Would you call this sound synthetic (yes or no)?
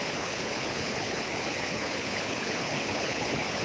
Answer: yes